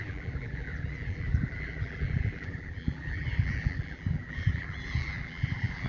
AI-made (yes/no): yes